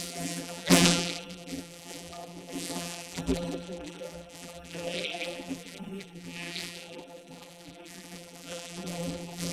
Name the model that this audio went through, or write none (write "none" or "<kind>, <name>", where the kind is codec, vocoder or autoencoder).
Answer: vocoder, BigVGAN v2